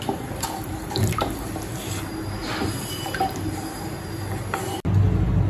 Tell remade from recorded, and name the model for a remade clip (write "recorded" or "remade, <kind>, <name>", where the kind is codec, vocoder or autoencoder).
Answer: recorded